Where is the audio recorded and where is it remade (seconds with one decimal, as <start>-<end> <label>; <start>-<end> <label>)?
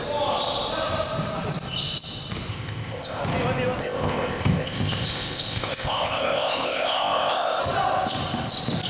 0.0-2.5 recorded; 2.5-3.2 remade; 3.2-3.8 recorded; 3.8-7.6 remade; 7.6-8.9 recorded